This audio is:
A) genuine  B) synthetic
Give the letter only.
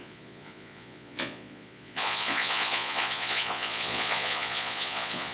B